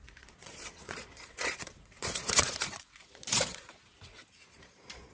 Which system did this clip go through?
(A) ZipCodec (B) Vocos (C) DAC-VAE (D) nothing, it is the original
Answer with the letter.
B